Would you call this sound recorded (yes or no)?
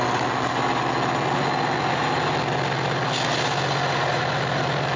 yes